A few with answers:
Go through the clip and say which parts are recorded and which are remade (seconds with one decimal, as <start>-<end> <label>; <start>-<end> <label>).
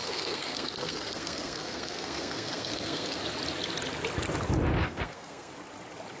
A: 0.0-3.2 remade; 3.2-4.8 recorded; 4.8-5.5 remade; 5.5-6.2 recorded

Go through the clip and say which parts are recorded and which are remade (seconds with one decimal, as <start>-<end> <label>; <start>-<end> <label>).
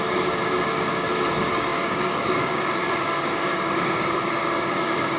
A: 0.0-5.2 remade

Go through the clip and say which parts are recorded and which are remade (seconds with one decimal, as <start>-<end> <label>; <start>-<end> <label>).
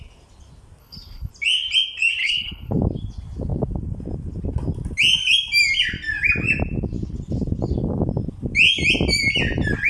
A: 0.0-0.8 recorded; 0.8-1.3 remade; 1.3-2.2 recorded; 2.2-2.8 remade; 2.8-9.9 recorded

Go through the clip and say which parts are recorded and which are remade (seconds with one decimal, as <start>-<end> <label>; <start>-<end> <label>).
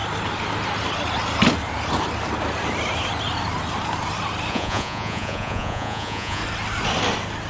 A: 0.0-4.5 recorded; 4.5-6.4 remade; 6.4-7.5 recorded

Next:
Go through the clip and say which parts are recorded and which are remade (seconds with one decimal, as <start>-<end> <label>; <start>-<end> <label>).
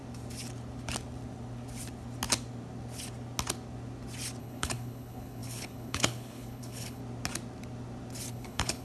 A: 0.0-4.4 recorded; 4.4-7.0 remade; 7.0-8.3 recorded; 8.3-8.8 remade